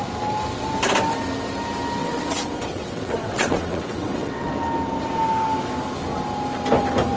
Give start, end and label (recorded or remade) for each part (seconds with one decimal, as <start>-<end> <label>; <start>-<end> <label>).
0.0-2.0 recorded; 2.0-4.5 remade; 4.5-7.2 recorded